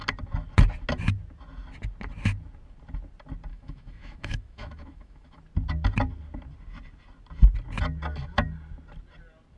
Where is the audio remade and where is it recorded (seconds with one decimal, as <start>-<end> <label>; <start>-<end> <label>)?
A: 0.0-3.5 recorded; 3.5-5.4 remade; 5.4-9.6 recorded